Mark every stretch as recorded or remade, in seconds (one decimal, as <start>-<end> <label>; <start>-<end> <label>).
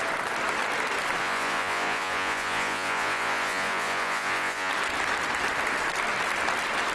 0.0-1.2 recorded; 1.2-4.7 remade; 4.7-6.9 recorded